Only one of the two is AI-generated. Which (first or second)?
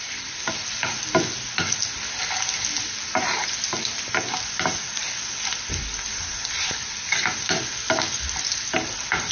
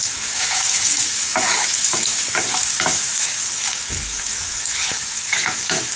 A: second